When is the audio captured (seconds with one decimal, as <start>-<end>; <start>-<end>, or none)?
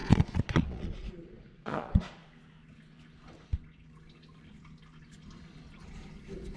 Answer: 2.2-6.6